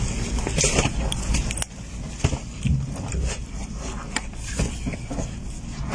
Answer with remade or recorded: recorded